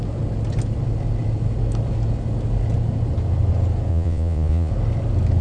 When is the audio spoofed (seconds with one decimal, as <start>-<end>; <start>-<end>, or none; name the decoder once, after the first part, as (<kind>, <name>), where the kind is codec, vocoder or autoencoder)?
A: 3.9-4.7 (vocoder, Vocos)